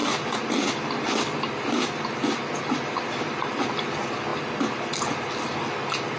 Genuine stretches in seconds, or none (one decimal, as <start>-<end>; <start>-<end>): 0.0-6.2